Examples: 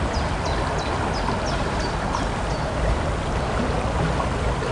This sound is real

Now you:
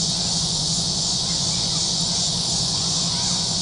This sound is fake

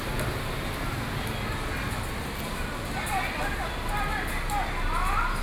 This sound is real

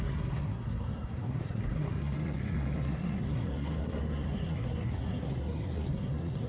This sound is fake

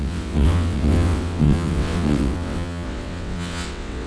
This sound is fake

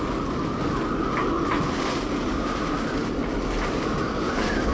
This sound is real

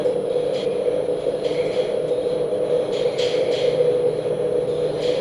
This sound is real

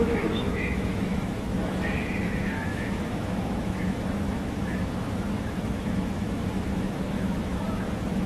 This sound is fake